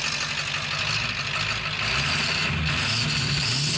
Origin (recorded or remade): recorded